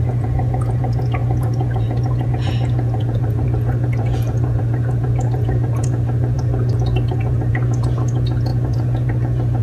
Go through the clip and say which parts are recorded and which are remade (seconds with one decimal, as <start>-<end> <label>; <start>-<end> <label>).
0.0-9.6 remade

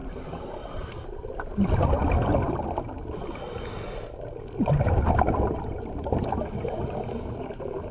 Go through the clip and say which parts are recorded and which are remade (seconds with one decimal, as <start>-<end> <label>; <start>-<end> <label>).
0.0-7.9 recorded

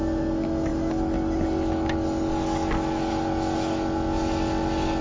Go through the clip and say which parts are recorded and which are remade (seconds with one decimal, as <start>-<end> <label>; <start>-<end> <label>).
0.0-5.0 recorded